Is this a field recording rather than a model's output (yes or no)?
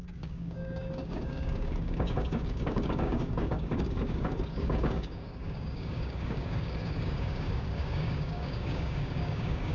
no